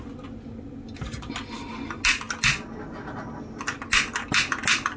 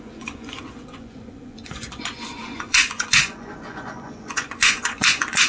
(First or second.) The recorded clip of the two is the first